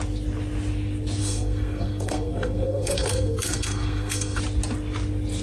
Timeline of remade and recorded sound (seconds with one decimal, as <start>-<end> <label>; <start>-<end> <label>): 0.0-1.2 recorded; 1.2-4.4 remade; 4.4-5.4 recorded